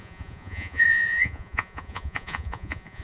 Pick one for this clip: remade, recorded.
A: remade